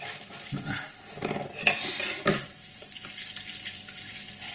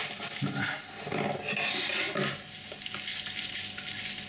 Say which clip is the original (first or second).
second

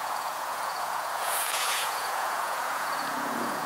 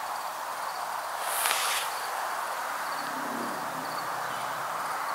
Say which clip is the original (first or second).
second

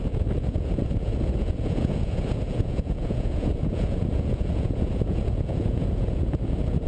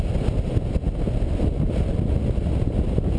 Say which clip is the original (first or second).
second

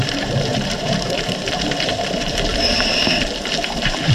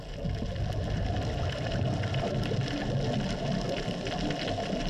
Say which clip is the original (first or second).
second